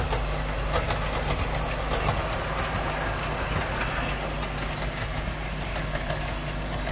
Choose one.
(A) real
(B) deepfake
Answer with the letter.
A